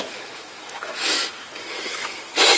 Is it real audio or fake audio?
fake